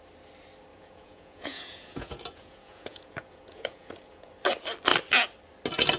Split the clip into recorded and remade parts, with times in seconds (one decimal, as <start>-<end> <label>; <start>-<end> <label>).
0.0-0.7 recorded; 0.7-4.3 remade; 4.3-6.0 recorded